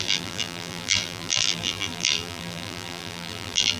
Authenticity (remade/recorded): remade